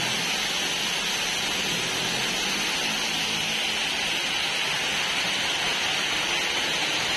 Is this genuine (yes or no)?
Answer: yes